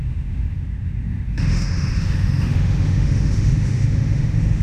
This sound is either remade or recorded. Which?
remade